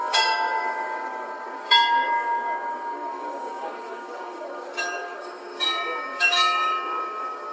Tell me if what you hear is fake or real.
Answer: fake